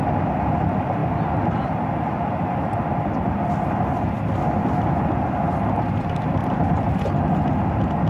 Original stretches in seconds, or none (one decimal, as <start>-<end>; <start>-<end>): 0.0-1.0; 3.1-6.4; 7.0-8.1